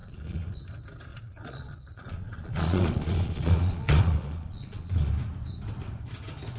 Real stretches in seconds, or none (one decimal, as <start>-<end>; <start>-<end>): 0.6-1.1; 5.1-6.6